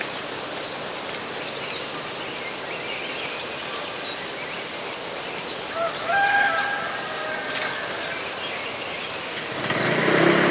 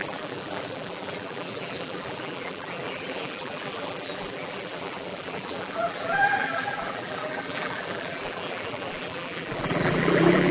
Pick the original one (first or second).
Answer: first